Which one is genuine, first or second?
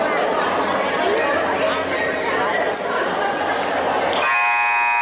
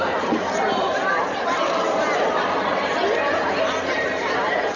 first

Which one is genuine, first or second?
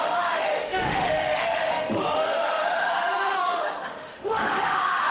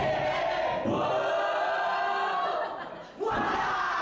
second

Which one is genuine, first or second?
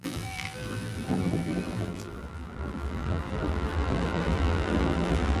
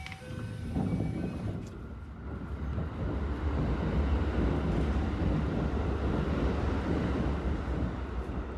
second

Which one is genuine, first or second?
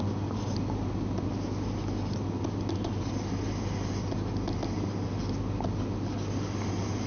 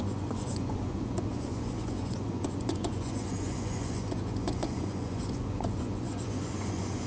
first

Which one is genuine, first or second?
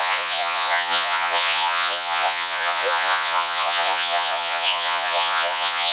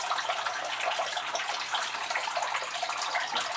second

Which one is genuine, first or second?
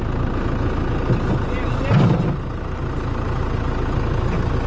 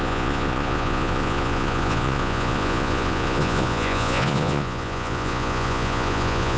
first